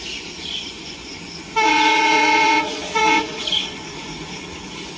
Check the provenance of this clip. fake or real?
fake